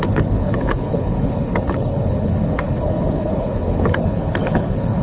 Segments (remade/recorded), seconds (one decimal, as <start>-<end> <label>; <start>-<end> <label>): 0.0-5.0 remade